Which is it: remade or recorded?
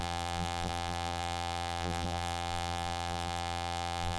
remade